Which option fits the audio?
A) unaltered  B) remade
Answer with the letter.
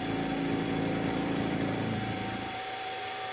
B